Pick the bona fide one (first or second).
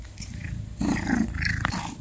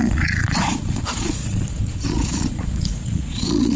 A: first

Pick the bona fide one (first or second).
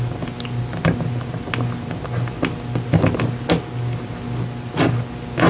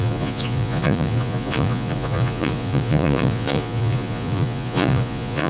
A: first